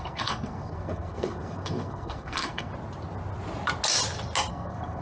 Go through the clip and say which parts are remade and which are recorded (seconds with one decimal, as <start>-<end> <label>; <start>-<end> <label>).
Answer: 0.0-2.7 remade; 2.7-4.5 recorded; 4.5-5.0 remade